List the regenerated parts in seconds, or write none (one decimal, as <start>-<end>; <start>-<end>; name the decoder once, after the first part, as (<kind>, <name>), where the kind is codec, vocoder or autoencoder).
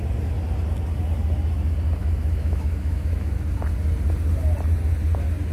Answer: 2.0-3.3 (autoencoder, DAC-VAE)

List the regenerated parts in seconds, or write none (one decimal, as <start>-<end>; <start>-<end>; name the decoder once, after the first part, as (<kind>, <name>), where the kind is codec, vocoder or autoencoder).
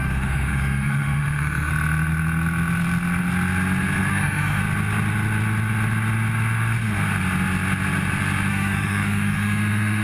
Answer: 0.0-1.7 (autoencoder, DAC-VAE); 4.1-4.6; 8.5-10.0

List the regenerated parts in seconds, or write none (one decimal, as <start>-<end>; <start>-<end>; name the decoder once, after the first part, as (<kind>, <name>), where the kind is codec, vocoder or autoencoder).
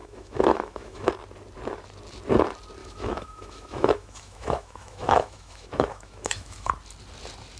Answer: 0.0-1.1 (autoencoder, DAC-VAE); 2.8-6.7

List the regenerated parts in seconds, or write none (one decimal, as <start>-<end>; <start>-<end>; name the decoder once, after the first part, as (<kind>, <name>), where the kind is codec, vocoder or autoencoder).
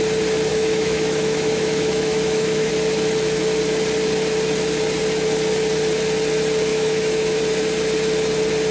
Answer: 0.5-2.7 (autoencoder, DAC-VAE); 6.7-7.4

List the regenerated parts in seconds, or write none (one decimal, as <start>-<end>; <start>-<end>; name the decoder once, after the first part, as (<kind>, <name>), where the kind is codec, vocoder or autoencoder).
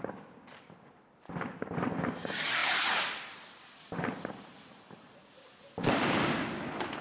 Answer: none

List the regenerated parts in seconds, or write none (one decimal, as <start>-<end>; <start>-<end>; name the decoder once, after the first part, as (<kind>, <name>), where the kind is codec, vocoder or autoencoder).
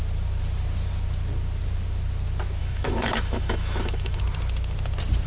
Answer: 2.6-4.2 (autoencoder, DAC-VAE)